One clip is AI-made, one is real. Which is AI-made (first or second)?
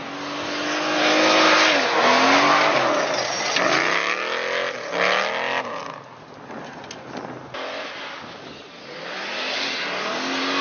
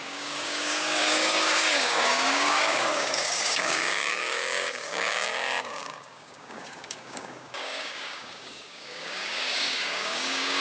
second